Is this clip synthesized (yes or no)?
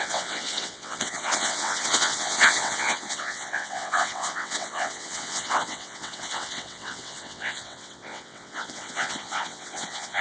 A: yes